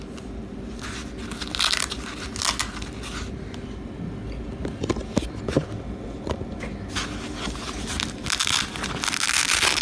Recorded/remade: recorded